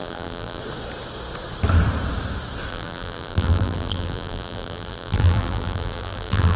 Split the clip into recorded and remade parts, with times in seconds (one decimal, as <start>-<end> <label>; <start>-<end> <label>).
0.0-0.6 remade; 0.6-2.7 recorded; 2.7-6.6 remade